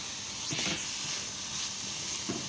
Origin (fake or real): real